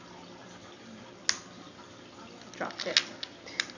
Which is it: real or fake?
real